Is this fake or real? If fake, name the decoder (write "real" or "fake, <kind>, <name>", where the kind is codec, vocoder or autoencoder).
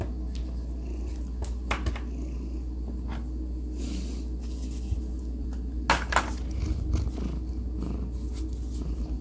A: real